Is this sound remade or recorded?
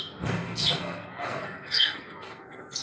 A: remade